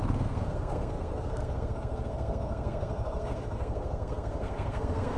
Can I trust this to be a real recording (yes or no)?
no